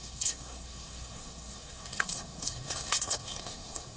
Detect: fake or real fake